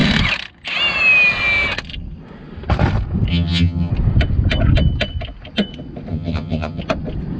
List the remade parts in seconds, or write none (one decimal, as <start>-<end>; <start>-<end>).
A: 3.3-3.9; 6.1-6.8